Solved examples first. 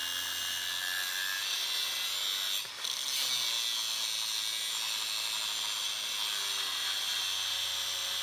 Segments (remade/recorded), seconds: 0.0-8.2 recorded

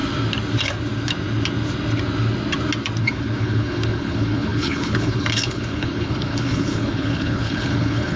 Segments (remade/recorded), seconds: 0.0-3.0 recorded; 3.0-8.2 remade

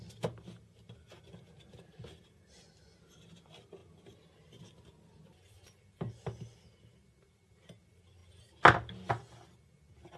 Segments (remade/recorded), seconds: 0.0-10.2 recorded

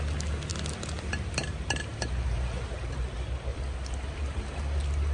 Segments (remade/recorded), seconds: 0.0-1.9 recorded; 1.9-3.0 remade; 3.0-3.5 recorded; 3.5-4.6 remade; 4.6-5.1 recorded

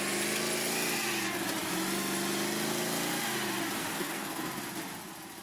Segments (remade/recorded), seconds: 0.0-3.8 recorded; 3.8-4.4 remade; 4.4-5.4 recorded

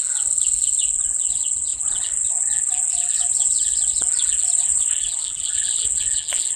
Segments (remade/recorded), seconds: 0.0-6.6 remade